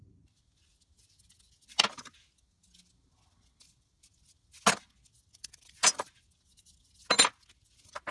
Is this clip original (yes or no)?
yes